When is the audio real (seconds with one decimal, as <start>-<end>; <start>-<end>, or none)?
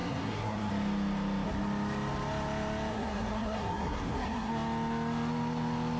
0.7-2.9; 4.5-6.0